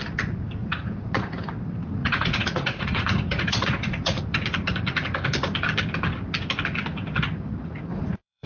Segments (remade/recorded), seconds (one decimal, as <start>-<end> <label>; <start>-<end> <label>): 0.0-0.6 recorded; 0.6-1.5 remade; 1.5-2.0 recorded; 2.0-4.2 remade; 4.2-7.9 recorded; 7.9-8.5 remade